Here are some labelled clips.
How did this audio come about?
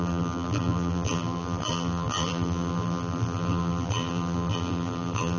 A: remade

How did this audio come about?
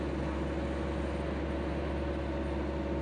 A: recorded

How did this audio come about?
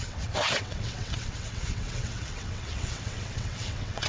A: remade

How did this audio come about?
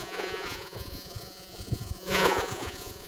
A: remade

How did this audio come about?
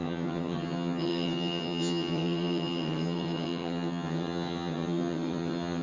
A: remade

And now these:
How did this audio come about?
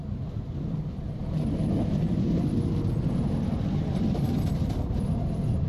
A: recorded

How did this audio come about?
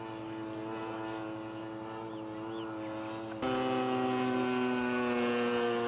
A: recorded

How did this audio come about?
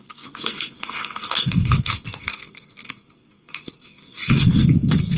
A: remade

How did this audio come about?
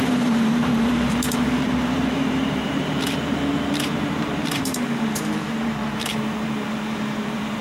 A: remade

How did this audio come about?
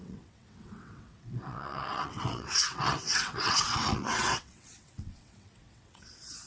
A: remade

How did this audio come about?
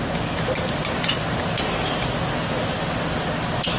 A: recorded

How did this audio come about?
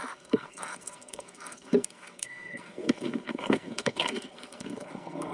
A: remade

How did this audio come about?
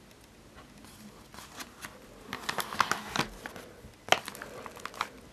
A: recorded